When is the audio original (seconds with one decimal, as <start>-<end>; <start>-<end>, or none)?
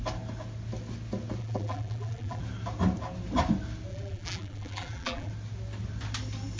0.0-1.4; 2.4-3.9; 5.3-6.6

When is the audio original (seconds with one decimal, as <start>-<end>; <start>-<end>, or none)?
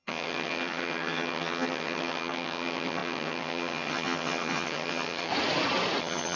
5.3-6.0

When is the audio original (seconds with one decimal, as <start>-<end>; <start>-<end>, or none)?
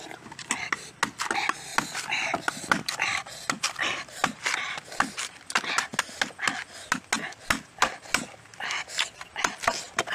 0.0-10.1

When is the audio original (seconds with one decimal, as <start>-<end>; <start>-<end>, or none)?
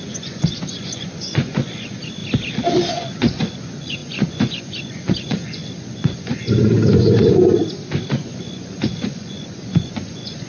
2.2-2.9; 7.4-8.1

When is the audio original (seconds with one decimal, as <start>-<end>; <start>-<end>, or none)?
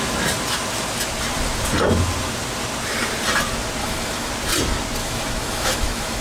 0.0-3.8; 4.3-5.0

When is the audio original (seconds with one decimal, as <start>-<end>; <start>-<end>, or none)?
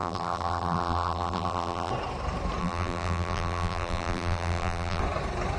1.9-2.6; 5.0-5.6